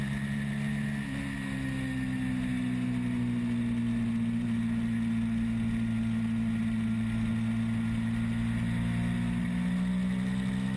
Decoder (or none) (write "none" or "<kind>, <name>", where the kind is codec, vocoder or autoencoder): none